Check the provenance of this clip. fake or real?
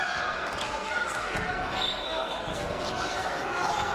fake